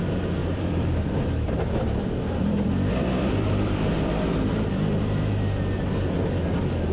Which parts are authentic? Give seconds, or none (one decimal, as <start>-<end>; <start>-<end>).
0.0-0.4; 4.5-6.9